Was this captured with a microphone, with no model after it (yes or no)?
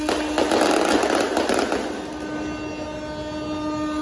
yes